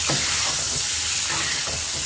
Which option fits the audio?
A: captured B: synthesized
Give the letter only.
A